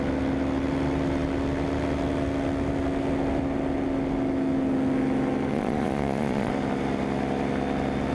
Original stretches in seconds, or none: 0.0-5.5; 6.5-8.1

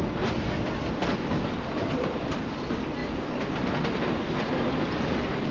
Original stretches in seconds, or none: 0.0-5.5

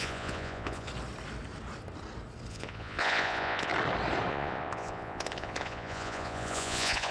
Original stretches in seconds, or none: 0.9-2.5; 3.7-4.3

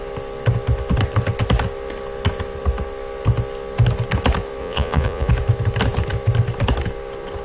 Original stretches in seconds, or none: 0.0-4.6; 5.3-7.4

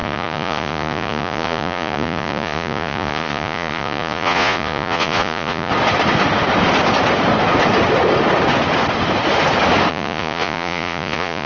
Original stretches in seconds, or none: 5.7-9.9

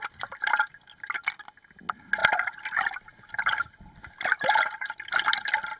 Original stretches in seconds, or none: 0.0-5.8